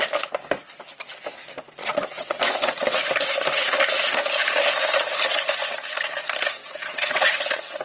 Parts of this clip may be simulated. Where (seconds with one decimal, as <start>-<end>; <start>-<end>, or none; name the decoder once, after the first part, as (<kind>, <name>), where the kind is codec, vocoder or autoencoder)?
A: 1.8-2.4 (vocoder, WaveNeXt); 6.6-7.8